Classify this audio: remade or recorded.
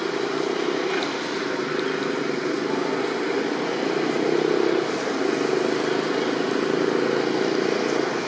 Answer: recorded